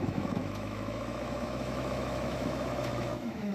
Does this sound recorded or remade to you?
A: remade